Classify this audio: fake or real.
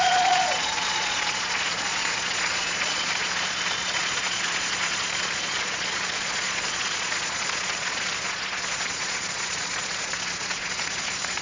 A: fake